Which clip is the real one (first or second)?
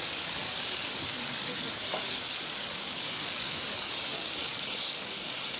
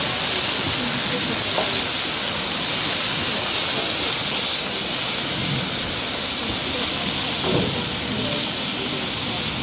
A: second